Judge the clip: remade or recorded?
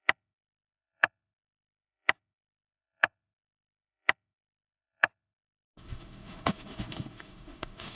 remade